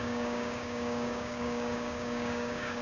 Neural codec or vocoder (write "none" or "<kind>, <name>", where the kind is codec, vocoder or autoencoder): codec, DAC